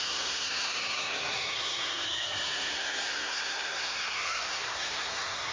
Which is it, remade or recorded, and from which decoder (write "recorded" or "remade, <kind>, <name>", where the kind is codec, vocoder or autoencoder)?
remade, codec, SNAC